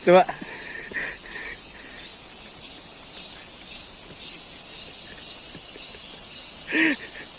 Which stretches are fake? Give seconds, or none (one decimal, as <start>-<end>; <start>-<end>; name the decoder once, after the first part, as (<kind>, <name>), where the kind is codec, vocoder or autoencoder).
none